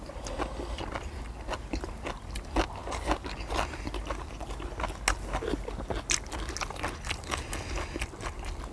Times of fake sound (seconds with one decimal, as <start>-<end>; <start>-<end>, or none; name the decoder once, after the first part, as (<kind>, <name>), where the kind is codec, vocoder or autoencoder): none